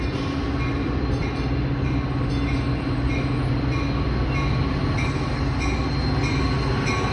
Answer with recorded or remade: recorded